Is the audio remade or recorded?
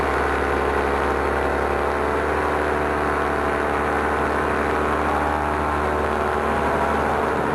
recorded